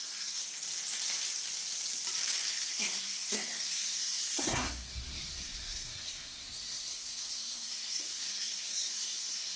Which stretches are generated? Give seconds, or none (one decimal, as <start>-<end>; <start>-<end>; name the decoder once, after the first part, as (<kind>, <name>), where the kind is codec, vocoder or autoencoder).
0.0-0.4 (codec, SNAC); 2.5-9.6